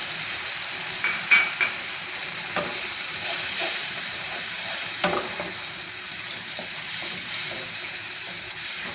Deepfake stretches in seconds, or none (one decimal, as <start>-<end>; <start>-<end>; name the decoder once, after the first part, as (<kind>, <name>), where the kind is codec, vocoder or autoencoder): 0.0-8.9 (vocoder, BigVGAN v2)